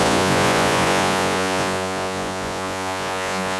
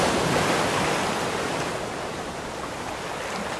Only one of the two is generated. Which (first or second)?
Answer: first